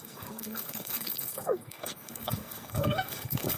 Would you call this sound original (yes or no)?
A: no